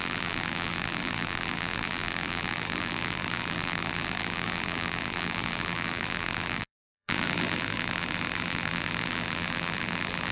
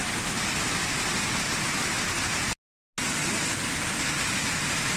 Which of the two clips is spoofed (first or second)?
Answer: first